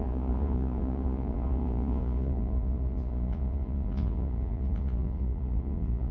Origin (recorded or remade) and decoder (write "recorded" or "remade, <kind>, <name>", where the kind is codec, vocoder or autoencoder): remade, vocoder, Vocos